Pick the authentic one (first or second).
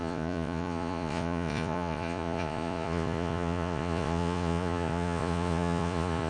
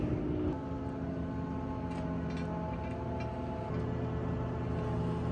second